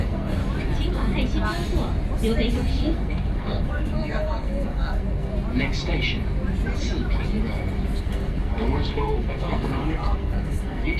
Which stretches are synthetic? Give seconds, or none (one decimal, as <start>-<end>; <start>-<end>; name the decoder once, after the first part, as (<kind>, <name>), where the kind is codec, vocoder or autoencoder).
0.0-0.4 (codec, SNAC); 2.5-5.3; 8.0-11.0